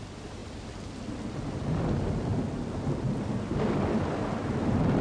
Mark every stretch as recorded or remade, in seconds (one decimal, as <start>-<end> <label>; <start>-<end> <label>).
0.0-5.0 recorded